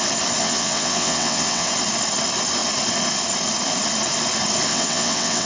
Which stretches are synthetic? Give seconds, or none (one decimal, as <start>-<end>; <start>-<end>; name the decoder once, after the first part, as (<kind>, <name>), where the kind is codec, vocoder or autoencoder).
0.4-1.7 (vocoder, WaveNeXt); 4.7-5.5